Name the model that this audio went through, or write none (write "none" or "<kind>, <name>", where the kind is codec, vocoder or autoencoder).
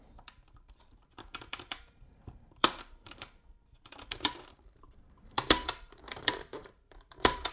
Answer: vocoder, BigVGAN v2